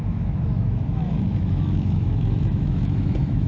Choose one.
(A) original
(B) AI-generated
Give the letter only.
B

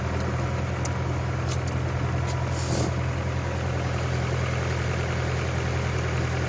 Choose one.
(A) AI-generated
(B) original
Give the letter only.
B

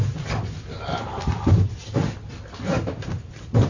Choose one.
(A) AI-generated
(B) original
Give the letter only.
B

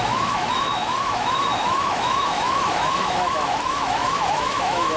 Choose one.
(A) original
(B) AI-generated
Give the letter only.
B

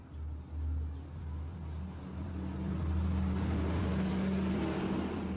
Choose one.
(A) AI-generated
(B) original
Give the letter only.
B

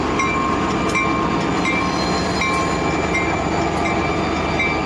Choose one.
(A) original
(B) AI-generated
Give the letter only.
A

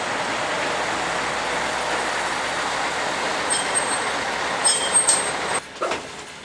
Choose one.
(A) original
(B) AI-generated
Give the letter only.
A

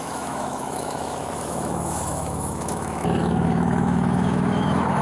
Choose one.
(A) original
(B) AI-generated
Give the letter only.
B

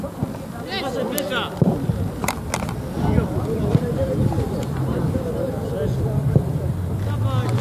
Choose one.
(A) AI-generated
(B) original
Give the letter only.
B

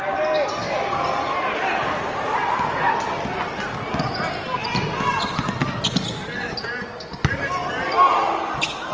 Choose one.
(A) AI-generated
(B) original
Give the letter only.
B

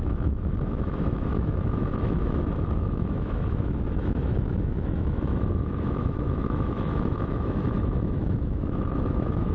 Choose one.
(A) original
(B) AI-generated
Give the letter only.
B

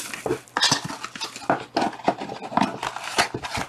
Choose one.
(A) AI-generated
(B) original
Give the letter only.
B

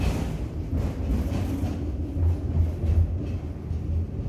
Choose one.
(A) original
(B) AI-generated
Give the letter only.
A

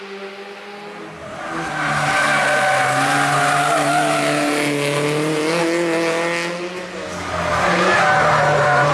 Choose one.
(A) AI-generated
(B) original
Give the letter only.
B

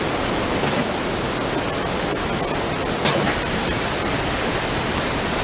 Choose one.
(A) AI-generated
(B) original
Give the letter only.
B